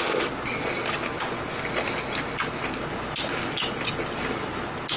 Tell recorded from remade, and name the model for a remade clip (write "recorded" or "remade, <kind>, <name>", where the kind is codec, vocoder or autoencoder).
recorded